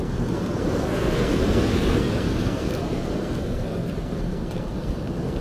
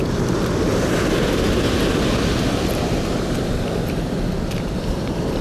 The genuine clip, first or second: second